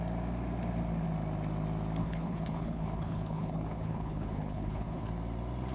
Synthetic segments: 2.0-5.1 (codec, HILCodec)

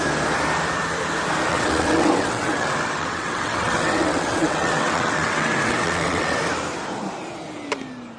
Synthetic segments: 1.5-6.4 (vocoder, WaveNeXt)

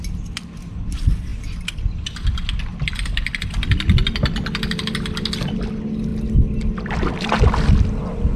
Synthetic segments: none

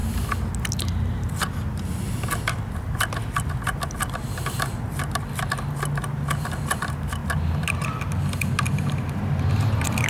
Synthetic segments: none

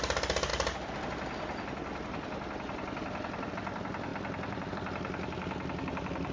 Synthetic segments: none